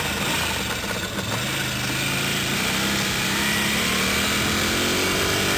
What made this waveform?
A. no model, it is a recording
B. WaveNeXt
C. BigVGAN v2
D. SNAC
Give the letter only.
A